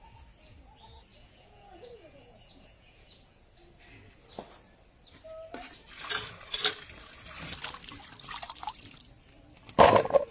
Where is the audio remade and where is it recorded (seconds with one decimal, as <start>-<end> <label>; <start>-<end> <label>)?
0.0-1.1 recorded; 1.1-3.5 remade; 3.5-10.3 recorded